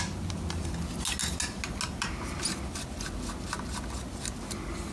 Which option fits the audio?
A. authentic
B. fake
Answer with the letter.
A